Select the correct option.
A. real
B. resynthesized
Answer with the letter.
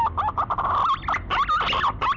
A